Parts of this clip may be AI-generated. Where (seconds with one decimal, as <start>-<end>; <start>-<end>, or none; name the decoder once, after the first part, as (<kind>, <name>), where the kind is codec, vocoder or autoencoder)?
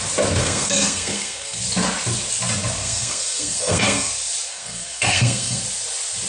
0.4-1.6 (codec, SNAC); 2.8-4.1; 4.5-5.6